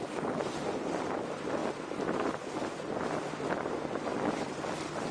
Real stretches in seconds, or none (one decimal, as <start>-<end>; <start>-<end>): 0.0-5.1